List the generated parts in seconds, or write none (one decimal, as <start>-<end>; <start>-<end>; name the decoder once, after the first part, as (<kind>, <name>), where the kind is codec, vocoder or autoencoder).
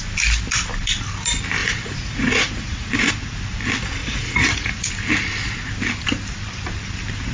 1.6-3.1 (vocoder, Vocos); 4.0-4.9